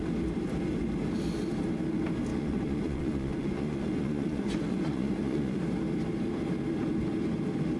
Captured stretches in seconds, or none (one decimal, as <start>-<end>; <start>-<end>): 0.0-2.3; 5.6-7.8